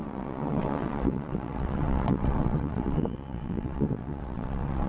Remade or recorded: remade